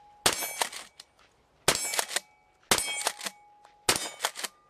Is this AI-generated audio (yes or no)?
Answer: no